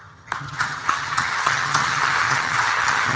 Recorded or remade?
remade